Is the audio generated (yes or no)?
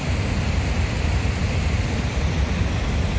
no